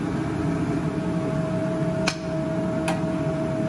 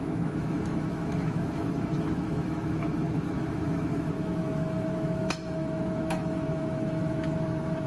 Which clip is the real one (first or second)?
first